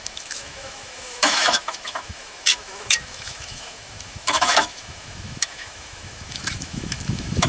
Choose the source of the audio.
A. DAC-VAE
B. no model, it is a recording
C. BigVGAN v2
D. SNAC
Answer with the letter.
A